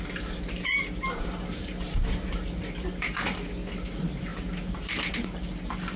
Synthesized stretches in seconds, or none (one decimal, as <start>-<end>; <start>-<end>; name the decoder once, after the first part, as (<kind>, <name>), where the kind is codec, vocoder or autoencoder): none